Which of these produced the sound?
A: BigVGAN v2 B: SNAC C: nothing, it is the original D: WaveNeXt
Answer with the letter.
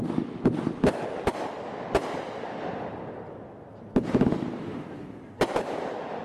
C